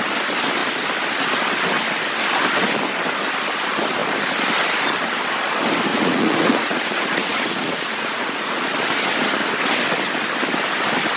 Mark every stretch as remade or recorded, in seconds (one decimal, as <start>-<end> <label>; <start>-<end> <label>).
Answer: 0.0-5.9 recorded; 5.9-8.7 remade; 8.7-11.2 recorded